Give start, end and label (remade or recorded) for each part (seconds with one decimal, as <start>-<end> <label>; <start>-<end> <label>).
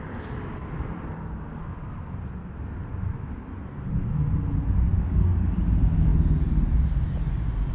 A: 0.0-4.9 recorded; 4.9-5.4 remade; 5.4-7.7 recorded